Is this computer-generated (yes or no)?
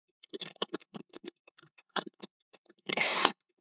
yes